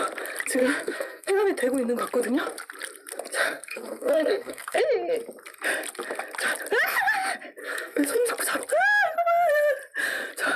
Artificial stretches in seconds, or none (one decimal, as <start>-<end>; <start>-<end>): 0.6-1.3; 3.4-4.8; 7.6-8.3